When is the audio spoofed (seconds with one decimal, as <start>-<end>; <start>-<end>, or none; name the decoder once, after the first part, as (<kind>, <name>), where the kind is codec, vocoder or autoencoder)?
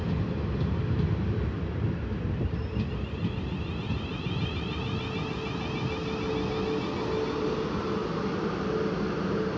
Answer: none